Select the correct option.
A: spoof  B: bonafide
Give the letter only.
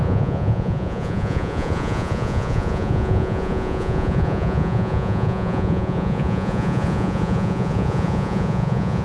A